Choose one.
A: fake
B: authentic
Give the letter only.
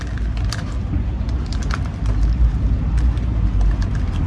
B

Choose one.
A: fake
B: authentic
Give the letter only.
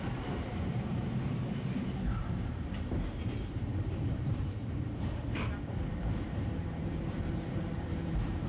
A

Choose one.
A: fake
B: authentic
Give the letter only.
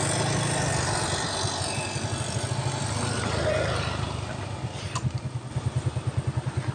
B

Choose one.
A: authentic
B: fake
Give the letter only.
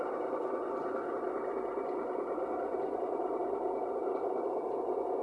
A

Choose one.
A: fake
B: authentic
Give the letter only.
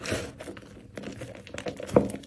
B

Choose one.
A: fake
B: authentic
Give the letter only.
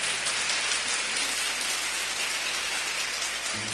B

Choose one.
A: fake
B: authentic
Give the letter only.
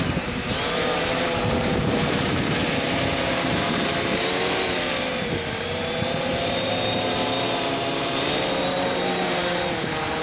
A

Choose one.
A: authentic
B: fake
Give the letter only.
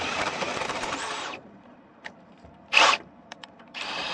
B